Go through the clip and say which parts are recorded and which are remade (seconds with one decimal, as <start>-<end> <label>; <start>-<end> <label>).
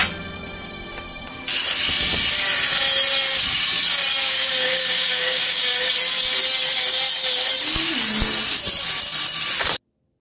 0.0-4.2 recorded; 4.2-5.9 remade; 5.9-10.3 recorded